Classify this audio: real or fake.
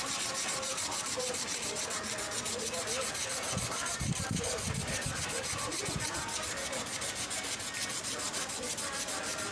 real